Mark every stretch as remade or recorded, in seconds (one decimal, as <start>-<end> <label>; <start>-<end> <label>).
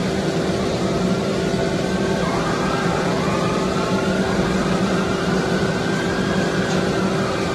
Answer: 0.0-7.5 recorded